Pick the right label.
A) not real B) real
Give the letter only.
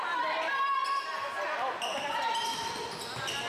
B